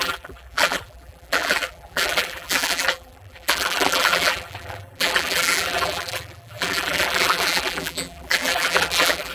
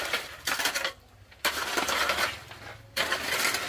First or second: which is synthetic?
first